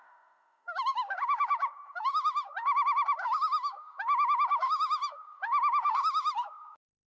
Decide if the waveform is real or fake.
fake